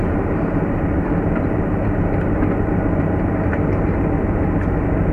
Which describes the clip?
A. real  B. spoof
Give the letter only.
B